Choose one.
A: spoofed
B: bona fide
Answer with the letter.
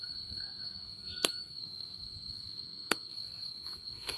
A